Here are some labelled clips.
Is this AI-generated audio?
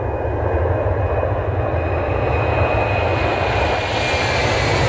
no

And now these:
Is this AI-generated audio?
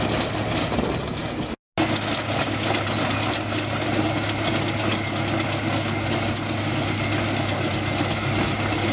no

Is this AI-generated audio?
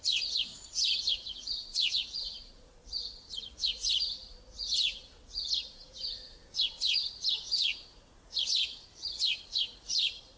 yes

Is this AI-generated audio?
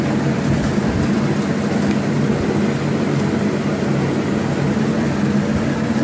no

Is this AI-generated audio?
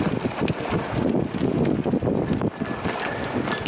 no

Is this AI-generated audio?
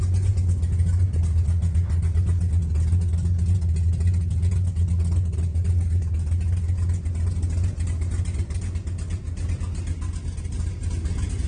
no